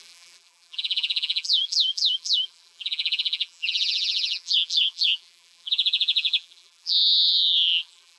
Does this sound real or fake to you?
fake